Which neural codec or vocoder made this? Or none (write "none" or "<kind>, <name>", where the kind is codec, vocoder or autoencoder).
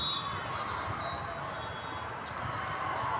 none